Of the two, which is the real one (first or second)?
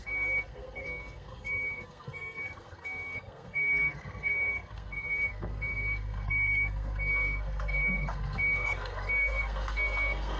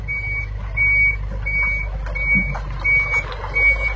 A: second